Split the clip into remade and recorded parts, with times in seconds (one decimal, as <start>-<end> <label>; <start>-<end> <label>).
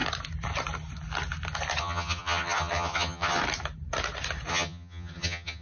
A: 0.0-1.8 recorded; 1.8-3.4 remade; 3.4-4.5 recorded; 4.5-5.6 remade